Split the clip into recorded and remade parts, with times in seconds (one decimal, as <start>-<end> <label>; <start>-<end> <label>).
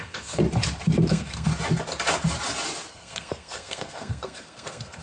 0.0-0.4 remade; 0.4-1.1 recorded; 1.1-1.5 remade; 1.5-2.9 recorded; 2.9-5.0 remade